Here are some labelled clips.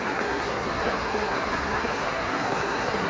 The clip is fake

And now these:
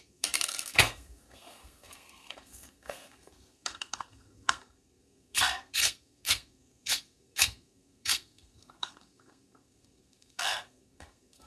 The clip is fake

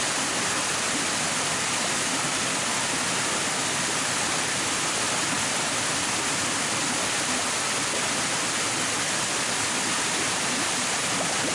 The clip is real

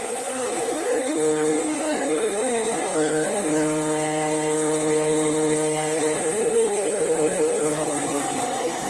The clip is fake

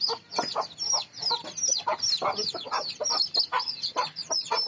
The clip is real